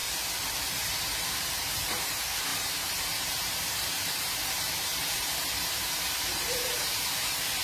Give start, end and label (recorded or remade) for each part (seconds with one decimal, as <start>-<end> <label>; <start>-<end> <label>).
0.0-0.7 recorded; 0.7-7.6 remade

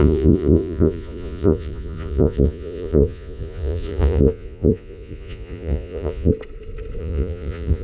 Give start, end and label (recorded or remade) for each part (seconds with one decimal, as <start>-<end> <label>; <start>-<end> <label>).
0.0-6.3 remade; 6.3-7.0 recorded; 7.0-7.8 remade

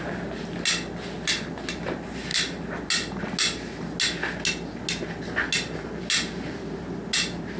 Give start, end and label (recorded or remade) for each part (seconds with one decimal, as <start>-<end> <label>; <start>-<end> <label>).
0.0-7.6 recorded